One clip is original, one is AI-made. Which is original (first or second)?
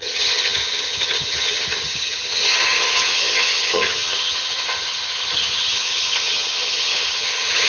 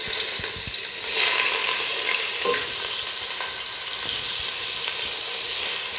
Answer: second